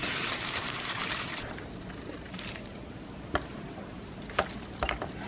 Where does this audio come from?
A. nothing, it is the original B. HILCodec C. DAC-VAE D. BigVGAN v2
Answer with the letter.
D